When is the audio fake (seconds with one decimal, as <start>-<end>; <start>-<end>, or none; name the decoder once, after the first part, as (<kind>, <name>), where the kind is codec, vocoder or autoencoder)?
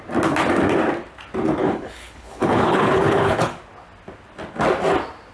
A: 1.6-3.6 (codec, HILCodec)